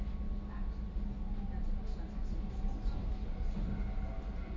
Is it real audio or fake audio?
real